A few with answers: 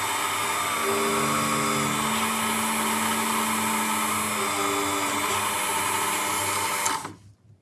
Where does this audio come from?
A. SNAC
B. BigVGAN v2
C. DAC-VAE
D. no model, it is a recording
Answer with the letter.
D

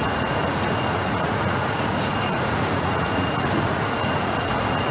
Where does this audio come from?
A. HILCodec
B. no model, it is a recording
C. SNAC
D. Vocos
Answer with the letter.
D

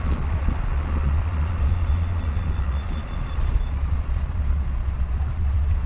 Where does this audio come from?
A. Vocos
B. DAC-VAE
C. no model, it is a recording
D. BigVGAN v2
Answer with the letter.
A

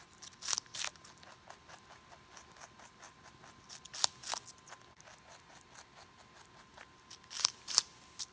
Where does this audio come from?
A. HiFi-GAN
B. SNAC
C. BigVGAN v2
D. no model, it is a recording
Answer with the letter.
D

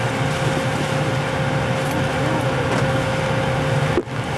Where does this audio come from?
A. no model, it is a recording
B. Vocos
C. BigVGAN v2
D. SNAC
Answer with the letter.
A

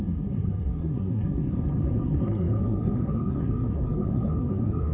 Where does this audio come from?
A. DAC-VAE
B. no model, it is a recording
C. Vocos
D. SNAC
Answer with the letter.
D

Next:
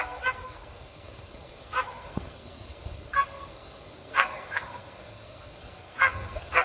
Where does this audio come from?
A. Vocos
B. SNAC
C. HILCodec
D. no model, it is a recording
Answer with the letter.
B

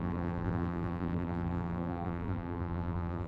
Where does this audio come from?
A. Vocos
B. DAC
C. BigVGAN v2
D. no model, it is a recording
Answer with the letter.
C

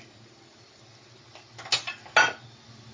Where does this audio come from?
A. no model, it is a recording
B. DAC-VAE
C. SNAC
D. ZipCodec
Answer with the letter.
A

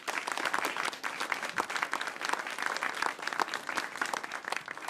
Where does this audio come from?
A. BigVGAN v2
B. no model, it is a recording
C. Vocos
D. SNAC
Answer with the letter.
B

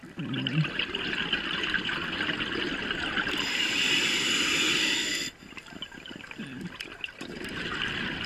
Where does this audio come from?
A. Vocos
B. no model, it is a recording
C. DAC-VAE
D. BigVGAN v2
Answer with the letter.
B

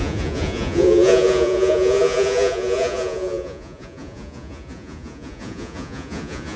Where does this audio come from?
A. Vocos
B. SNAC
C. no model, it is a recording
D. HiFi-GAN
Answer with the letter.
A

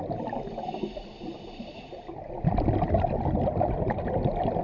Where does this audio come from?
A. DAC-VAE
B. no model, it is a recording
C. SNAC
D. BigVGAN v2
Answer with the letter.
B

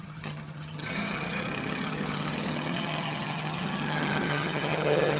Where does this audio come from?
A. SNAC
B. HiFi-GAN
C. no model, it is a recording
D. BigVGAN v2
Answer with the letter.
B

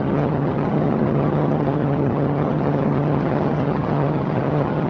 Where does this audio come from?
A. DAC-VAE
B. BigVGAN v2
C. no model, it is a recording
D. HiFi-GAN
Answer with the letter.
D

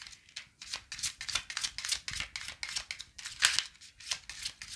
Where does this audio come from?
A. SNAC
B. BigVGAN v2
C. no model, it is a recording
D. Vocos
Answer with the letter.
C